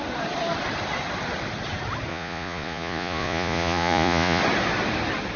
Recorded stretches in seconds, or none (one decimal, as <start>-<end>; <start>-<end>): 0.0-2.1; 4.4-5.4